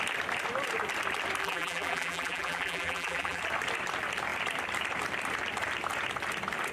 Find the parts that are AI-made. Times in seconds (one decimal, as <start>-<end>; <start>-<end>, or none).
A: 1.4-3.4